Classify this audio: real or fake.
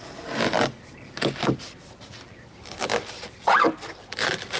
real